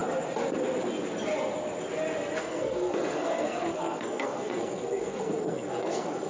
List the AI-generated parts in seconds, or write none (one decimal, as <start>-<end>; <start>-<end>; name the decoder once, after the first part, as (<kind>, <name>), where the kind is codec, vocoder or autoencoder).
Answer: 2.4-6.3 (codec, SNAC)